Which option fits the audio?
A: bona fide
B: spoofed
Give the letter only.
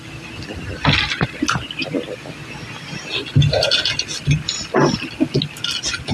A